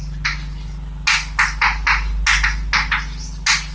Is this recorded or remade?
recorded